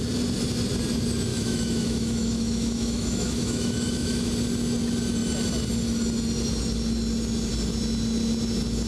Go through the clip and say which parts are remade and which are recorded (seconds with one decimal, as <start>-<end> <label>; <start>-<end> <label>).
0.0-1.3 recorded; 1.3-4.3 remade; 4.3-8.9 recorded